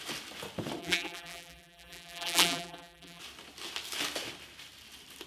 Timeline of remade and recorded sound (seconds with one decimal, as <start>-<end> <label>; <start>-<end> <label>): 0.0-0.8 recorded; 0.8-3.2 remade; 3.2-5.3 recorded